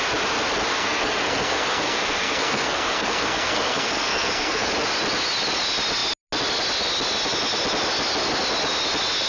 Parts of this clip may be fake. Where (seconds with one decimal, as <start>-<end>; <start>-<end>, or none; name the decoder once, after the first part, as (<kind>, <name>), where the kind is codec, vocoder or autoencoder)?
0.7-4.7 (codec, SNAC)